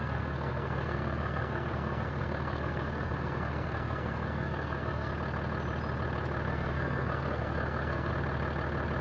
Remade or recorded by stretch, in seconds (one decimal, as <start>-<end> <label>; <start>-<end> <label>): 0.0-5.1 remade; 5.1-6.5 recorded; 6.5-8.1 remade; 8.1-9.0 recorded